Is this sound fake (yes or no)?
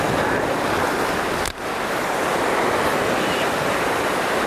no